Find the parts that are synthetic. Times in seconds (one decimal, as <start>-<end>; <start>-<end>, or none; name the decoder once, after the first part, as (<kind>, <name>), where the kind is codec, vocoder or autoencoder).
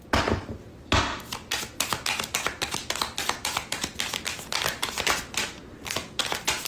none